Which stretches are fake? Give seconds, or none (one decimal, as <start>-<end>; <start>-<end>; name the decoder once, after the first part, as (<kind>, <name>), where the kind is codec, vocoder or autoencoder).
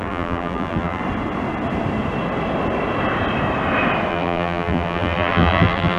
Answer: 0.0-1.0 (vocoder, BigVGAN v2); 4.1-6.0